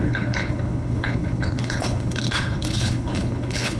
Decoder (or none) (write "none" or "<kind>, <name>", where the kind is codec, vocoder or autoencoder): codec, HILCodec